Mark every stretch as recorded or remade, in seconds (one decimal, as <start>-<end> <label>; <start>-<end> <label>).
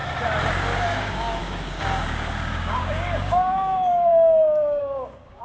0.0-0.5 recorded; 0.5-5.4 remade